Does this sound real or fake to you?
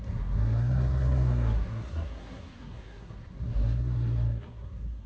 fake